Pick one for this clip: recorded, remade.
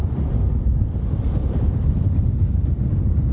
recorded